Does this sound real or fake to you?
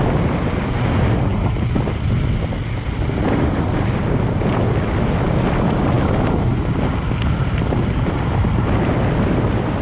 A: real